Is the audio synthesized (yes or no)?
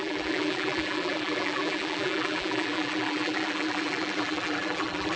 yes